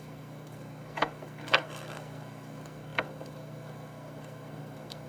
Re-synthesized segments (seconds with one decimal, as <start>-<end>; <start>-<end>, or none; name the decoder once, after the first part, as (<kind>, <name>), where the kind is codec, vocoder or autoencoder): 0.0-5.1 (codec, SNAC)